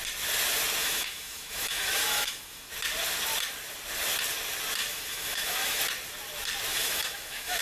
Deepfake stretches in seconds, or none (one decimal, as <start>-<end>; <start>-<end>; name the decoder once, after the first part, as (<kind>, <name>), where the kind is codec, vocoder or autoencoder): 0.8-2.7 (autoencoder, DAC-VAE); 4.8-5.8; 6.7-7.6